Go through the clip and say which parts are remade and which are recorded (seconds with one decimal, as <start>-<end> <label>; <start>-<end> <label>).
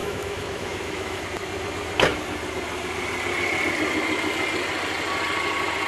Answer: 0.0-1.2 remade; 1.2-5.9 recorded